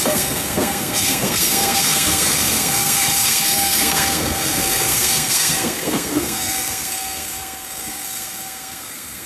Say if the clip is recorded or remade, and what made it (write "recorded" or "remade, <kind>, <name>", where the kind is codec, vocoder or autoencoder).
remade, codec, SNAC